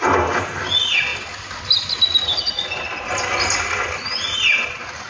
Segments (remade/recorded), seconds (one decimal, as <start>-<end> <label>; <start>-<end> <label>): 0.0-5.1 recorded